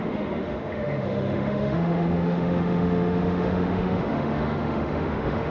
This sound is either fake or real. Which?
fake